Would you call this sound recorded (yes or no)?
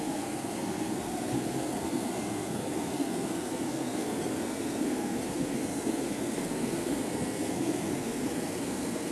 no